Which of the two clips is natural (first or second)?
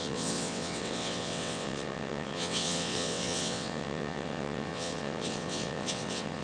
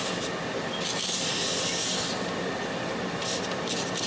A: second